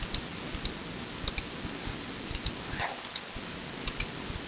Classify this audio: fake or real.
real